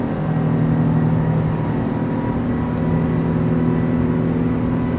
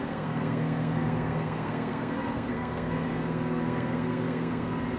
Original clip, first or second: first